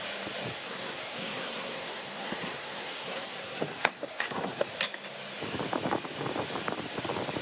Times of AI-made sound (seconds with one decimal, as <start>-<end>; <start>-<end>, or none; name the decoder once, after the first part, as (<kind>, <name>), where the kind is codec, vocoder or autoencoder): 0.5-4.7 (codec, SNAC)